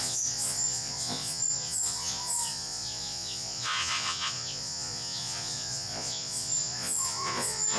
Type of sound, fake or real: fake